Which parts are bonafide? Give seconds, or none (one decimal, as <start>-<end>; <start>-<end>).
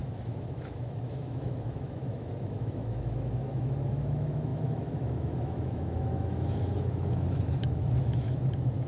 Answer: none